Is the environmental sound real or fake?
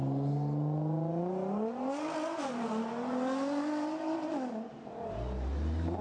real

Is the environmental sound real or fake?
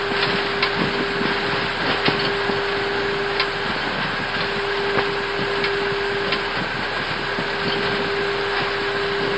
real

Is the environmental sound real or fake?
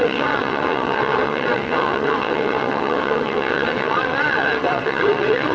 fake